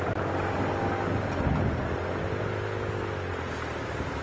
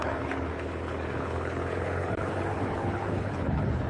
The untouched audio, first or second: first